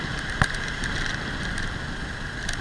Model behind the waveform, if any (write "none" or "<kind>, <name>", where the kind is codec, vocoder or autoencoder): none